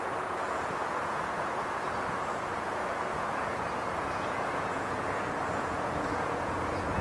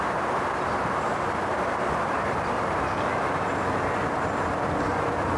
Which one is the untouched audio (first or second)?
second